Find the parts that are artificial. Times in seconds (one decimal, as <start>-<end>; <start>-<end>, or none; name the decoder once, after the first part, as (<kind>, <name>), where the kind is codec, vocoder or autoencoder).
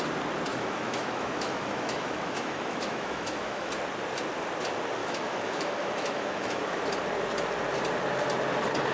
0.5-3.7 (autoencoder, DAC-VAE); 5.0-6.8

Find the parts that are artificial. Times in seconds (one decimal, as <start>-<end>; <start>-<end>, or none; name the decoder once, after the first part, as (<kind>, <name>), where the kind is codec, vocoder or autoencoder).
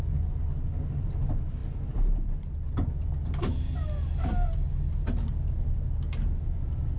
none